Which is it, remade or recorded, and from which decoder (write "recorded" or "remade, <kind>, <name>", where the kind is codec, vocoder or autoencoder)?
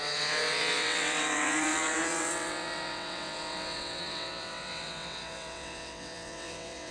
remade, vocoder, WaveNeXt